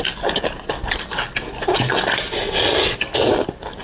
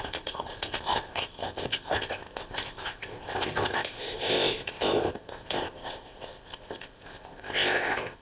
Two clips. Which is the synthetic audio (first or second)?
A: second